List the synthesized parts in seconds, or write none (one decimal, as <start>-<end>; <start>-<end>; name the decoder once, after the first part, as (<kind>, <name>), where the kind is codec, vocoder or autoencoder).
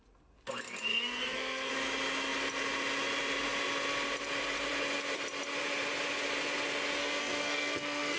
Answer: 0.9-1.7 (codec, SNAC); 7.0-8.2